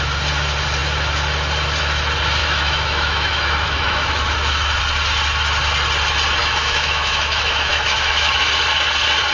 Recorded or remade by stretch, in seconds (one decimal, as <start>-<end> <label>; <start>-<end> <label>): 0.0-2.4 recorded; 2.4-4.8 remade; 4.8-6.4 recorded; 6.4-8.4 remade; 8.4-9.3 recorded